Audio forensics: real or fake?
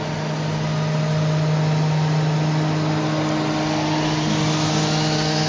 real